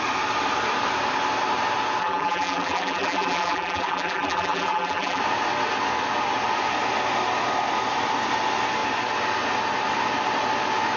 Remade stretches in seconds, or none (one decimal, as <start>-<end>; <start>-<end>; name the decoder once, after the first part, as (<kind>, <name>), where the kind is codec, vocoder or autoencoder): 2.0-5.2 (vocoder, BigVGAN v2)